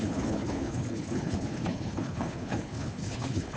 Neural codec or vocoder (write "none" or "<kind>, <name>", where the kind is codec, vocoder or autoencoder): codec, HILCodec